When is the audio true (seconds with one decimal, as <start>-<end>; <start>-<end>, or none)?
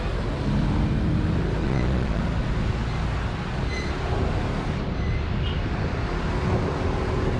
0.0-1.6; 2.2-7.4